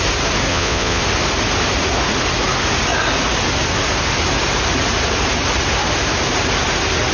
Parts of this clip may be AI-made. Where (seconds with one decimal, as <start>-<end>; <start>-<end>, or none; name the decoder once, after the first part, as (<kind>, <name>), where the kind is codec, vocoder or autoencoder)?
0.5-1.0 (vocoder, Vocos)